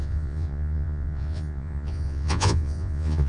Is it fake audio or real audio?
fake